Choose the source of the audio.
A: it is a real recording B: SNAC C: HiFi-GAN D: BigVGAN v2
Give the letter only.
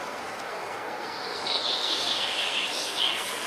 B